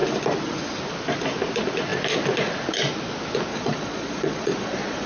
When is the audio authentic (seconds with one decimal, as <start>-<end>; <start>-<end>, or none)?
0.0-3.5